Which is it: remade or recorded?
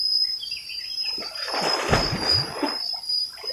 recorded